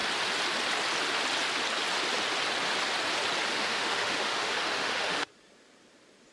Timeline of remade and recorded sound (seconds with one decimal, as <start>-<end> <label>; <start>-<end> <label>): 0.0-3.5 recorded; 3.5-5.3 remade; 5.3-6.3 recorded